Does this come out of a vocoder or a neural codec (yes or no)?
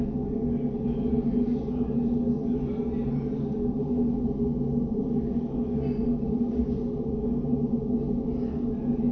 no